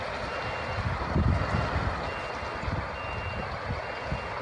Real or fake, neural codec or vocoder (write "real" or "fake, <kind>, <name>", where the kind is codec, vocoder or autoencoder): real